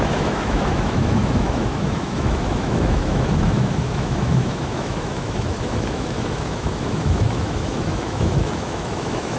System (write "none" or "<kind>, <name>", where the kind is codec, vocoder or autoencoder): autoencoder, DAC-VAE